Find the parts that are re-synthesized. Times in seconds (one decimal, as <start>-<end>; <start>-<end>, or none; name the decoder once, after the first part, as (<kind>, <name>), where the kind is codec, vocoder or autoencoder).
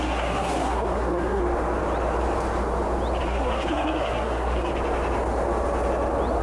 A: 0.0-1.4 (codec, SNAC); 3.2-4.7